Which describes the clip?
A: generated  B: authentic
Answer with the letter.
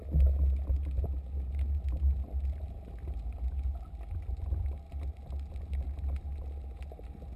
B